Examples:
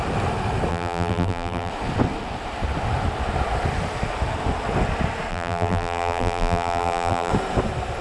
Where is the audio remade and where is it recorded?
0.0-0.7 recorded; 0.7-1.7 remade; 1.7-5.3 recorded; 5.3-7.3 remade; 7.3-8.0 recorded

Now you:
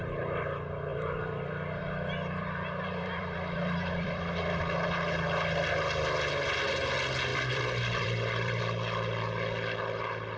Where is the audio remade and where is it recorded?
0.0-0.9 recorded; 0.9-4.6 remade; 4.6-7.3 recorded; 7.3-8.6 remade; 8.6-10.4 recorded